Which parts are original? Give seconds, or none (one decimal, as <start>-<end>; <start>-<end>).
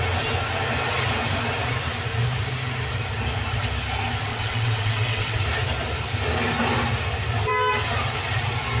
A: 0.0-4.3; 5.4-8.8